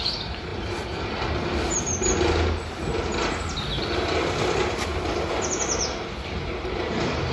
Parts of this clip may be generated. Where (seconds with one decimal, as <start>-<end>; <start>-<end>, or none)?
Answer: 0.0-0.5; 4.3-4.9; 6.6-7.3